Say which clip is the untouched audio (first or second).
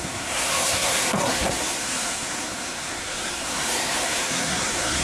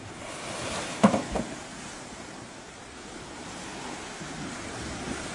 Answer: second